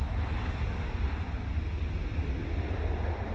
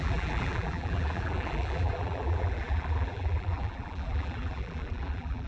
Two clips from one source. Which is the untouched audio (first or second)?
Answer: first